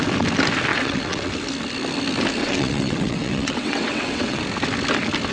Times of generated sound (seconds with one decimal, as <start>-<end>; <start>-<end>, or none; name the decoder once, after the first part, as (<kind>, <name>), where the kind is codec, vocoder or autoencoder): 0.7-1.3 (vocoder, WaveNeXt); 2.4-4.4

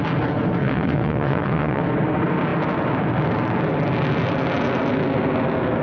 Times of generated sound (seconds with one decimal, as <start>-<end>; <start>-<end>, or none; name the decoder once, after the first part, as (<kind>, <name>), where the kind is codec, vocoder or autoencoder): 0.6-1.8 (vocoder, WaveNeXt)

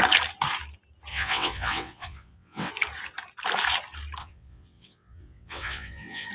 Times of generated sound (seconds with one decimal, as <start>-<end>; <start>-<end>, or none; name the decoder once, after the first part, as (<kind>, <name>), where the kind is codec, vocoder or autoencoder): 1.1-2.7 (vocoder, WaveNeXt); 4.2-6.3

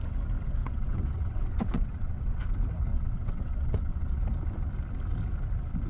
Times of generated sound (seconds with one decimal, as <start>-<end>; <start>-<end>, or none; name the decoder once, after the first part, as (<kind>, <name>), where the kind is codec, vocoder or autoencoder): 0.6-2.4 (vocoder, WaveNeXt); 2.9-4.2